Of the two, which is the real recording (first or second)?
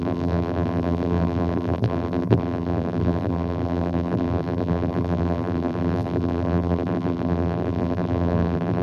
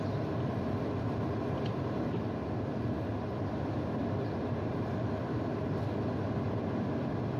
second